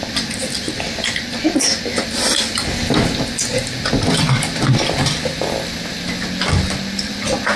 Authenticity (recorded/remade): recorded